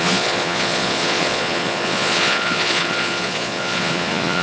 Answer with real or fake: fake